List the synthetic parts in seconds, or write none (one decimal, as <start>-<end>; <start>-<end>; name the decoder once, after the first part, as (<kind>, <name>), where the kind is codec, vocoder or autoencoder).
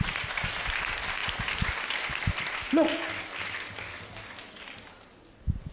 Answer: none